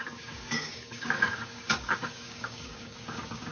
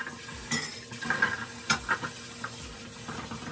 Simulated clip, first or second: first